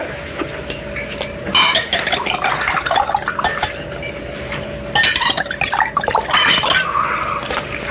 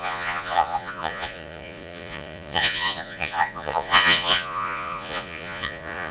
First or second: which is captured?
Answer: first